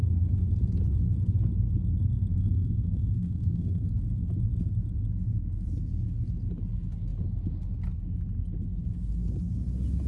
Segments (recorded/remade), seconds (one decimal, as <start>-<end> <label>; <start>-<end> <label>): 0.0-2.3 recorded; 2.3-3.9 remade; 3.9-10.1 recorded